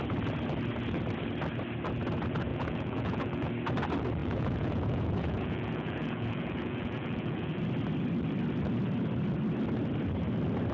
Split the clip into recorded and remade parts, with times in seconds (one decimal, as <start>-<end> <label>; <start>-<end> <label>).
0.0-2.5 recorded; 2.5-3.5 remade; 3.5-4.2 recorded; 4.2-7.6 remade; 7.6-10.7 recorded